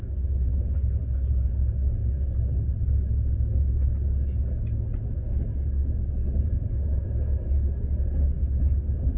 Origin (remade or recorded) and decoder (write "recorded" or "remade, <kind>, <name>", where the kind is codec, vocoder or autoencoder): recorded